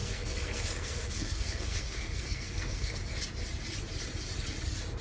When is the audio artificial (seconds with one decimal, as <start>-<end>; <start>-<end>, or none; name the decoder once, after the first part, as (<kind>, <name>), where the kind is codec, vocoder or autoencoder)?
0.0-3.0 (codec, SNAC)